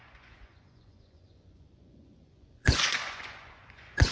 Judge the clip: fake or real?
fake